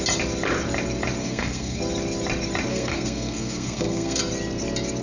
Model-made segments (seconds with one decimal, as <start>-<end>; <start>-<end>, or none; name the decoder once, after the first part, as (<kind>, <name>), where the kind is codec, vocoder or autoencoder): 1.2-1.8 (codec, SNAC); 2.7-4.2